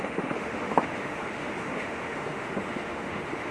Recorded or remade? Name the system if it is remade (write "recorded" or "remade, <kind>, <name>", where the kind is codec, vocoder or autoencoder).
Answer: remade, autoencoder, DAC-VAE